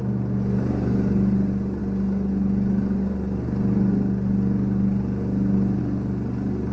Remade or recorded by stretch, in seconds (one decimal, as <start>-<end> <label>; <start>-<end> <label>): 0.0-6.7 recorded